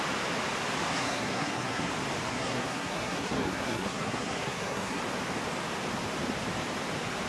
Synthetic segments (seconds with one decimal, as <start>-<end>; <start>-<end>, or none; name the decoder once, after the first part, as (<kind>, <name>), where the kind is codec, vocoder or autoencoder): 0.9-1.9 (codec, SNAC); 2.3-5.0